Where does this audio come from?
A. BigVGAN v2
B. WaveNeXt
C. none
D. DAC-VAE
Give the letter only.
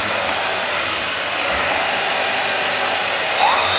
C